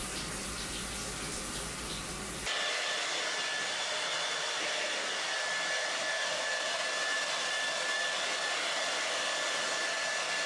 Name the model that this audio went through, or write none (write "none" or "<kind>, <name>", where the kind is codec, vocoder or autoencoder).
none